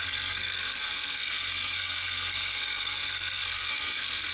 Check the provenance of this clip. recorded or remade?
remade